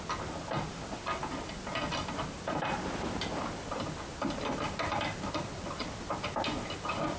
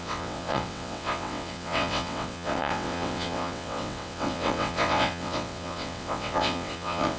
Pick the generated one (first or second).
second